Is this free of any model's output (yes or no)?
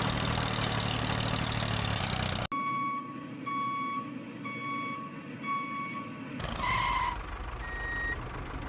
yes